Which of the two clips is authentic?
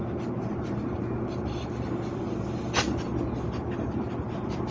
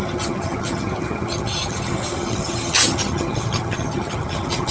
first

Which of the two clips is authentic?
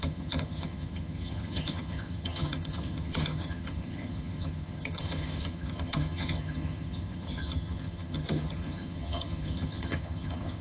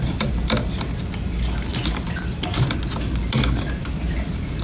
second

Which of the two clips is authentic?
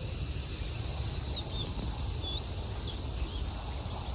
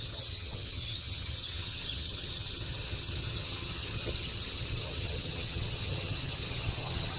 first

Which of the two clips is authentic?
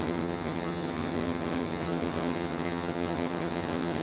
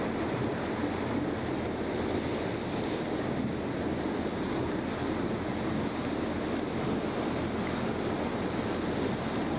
second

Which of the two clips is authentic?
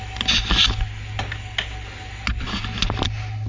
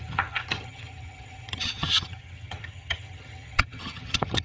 first